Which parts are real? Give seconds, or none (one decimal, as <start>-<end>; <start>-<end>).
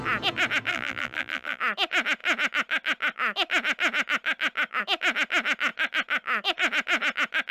0.0-0.7; 1.6-7.5